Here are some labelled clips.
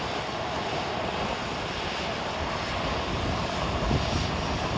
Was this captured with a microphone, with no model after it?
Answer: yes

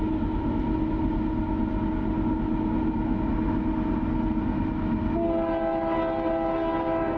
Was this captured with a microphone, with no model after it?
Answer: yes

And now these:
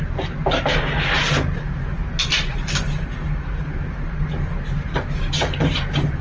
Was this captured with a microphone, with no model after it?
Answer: yes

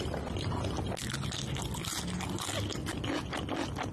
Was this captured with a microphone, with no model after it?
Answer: yes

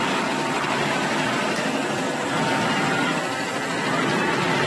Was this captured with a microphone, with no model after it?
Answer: yes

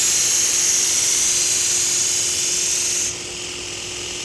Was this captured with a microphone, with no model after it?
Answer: no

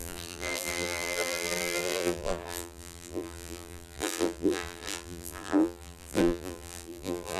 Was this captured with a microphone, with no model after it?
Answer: no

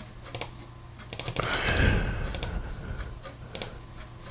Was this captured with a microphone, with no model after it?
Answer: yes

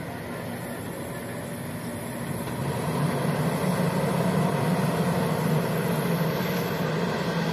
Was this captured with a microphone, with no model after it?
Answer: yes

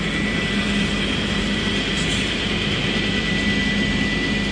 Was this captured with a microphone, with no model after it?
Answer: yes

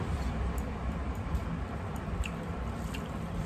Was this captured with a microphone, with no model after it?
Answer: no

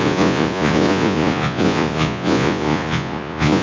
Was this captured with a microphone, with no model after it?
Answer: no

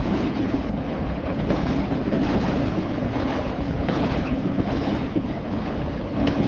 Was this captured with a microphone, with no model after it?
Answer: no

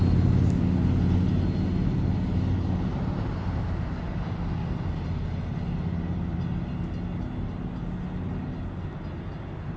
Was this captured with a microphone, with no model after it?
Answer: yes